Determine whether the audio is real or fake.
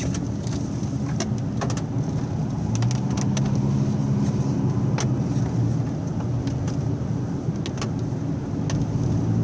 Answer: real